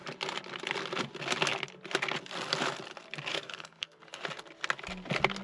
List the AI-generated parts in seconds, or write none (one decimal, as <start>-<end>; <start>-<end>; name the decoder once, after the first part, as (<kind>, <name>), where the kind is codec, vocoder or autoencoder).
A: 3.3-4.0 (codec, SNAC)

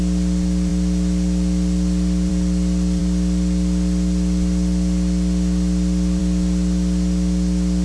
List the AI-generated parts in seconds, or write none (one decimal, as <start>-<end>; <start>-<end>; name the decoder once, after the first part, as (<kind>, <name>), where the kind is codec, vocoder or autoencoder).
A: none

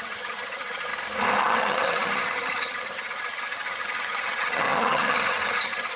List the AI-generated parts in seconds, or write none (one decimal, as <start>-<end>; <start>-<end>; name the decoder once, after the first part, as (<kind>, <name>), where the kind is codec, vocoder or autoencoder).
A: 0.0-0.9 (vocoder, HiFi-GAN); 1.4-6.0

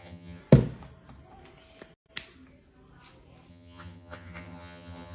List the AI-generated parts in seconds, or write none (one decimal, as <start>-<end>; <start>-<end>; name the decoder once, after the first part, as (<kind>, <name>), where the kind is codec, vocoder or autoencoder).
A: 0.0-0.4 (vocoder, HiFi-GAN); 3.5-5.1